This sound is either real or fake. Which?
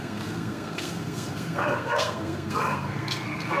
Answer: fake